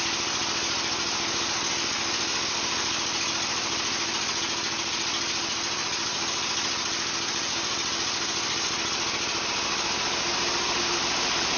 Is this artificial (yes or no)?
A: no